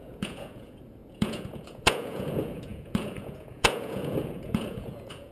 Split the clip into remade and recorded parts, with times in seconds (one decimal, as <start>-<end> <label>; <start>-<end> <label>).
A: 0.0-5.3 remade